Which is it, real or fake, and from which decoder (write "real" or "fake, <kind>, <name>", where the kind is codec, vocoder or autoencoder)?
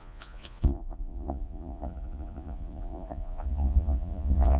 fake, vocoder, Vocos